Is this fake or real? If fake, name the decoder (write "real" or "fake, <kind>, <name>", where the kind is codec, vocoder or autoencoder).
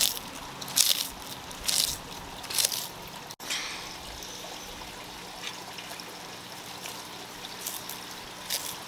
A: real